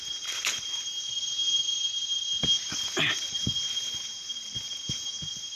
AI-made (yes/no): no